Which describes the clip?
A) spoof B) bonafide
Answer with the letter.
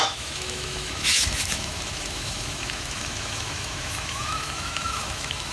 A